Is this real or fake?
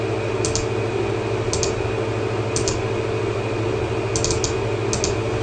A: real